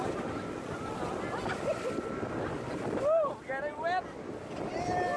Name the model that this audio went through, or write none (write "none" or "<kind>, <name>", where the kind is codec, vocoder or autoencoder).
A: none